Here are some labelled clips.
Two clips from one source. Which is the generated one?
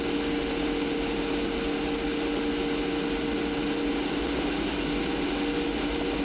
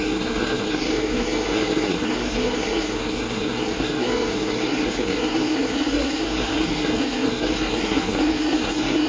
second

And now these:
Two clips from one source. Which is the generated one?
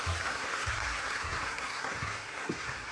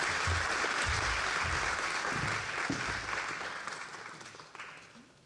first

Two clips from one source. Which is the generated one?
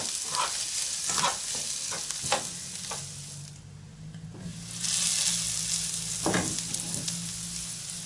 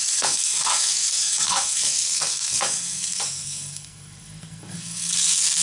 second